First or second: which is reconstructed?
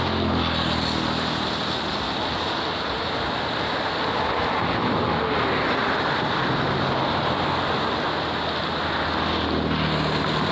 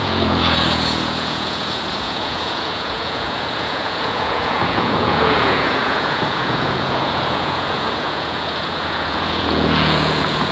second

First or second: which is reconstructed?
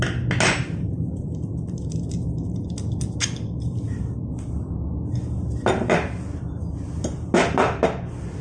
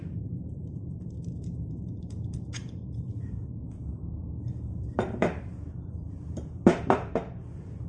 second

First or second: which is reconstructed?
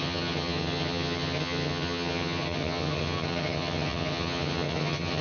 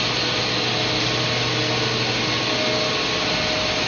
first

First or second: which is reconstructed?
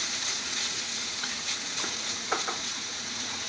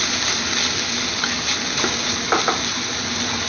first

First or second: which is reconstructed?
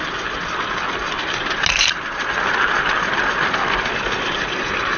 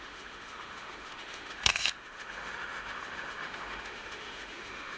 second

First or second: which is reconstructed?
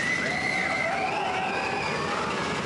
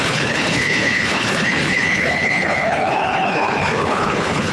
second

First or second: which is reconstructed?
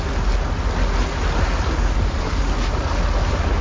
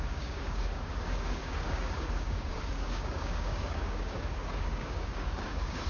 second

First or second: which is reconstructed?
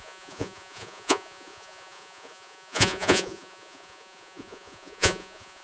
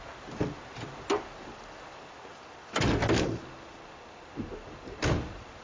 first